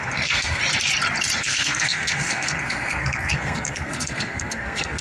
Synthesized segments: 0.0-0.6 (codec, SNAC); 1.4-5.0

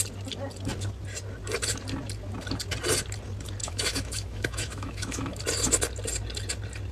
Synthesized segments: 3.6-5.4 (autoencoder, DAC-VAE)

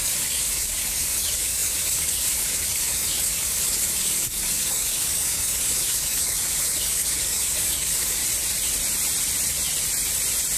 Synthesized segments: 0.0-8.2 (codec, DAC)

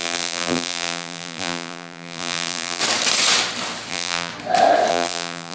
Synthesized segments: 0.0-2.8 (vocoder, BigVGAN v2); 3.9-4.3; 4.9-5.5

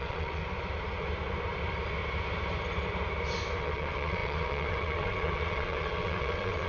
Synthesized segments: 0.0-0.4 (vocoder, WaveNeXt); 3.6-6.7